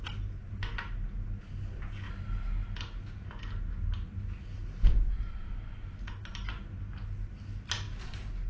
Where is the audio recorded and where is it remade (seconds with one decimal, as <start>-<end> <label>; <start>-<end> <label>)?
0.0-8.5 recorded